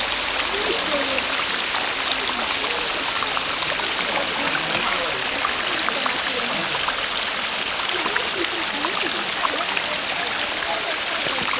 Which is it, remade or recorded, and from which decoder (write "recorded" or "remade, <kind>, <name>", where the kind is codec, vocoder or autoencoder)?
recorded